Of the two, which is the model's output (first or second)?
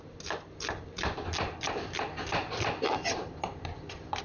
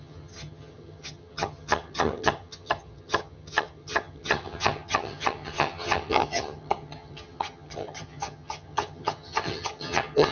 second